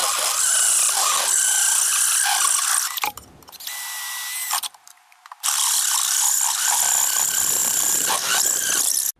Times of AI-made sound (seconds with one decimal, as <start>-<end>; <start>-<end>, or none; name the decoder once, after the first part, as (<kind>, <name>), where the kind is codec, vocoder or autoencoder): 7.6-8.1 (vocoder, BigVGAN v2)

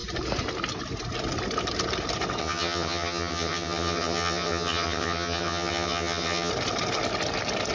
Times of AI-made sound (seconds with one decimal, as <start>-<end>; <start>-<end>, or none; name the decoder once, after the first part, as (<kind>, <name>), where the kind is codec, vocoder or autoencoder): 2.4-6.5 (vocoder, HiFi-GAN)

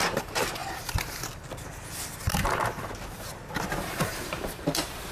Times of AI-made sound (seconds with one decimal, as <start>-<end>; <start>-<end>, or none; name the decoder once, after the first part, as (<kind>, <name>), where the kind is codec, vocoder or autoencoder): 0.0-0.6 (vocoder, BigVGAN v2); 3.7-5.1